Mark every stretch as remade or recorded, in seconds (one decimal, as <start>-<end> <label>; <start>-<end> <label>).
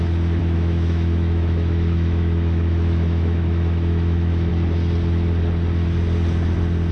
0.0-0.4 recorded; 0.4-4.5 remade; 4.5-6.9 recorded